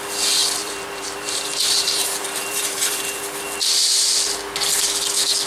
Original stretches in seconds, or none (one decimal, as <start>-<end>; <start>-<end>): 0.0-0.6; 3.2-5.5